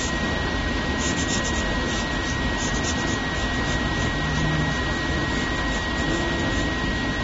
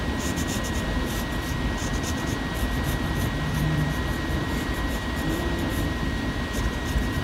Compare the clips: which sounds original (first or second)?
first